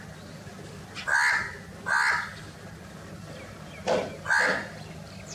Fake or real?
real